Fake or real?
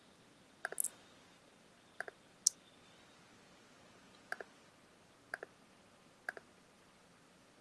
real